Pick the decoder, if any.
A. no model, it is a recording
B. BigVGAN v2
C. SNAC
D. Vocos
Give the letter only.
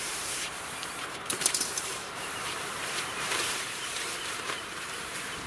B